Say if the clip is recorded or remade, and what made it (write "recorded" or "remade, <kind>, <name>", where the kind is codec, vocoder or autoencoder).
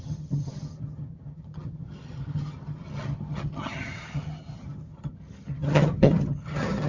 remade, vocoder, HiFi-GAN